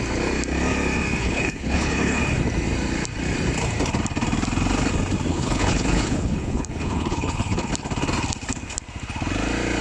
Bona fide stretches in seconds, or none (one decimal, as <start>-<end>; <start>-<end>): 0.0-1.2; 2.2-5.3; 7.7-9.8